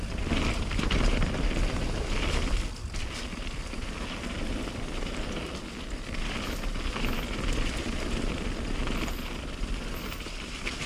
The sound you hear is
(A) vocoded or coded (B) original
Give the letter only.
A